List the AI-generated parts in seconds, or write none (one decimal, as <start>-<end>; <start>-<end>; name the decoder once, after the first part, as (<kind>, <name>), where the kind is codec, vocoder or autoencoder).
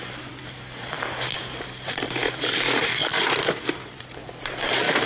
none